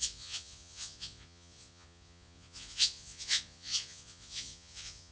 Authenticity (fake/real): fake